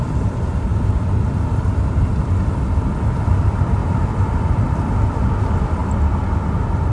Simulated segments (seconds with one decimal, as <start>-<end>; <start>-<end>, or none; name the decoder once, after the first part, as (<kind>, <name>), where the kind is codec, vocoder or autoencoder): 0.0-0.7 (vocoder, BigVGAN v2); 3.1-3.8; 5.0-5.8